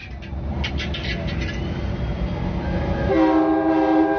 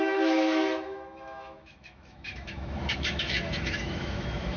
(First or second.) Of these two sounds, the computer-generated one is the second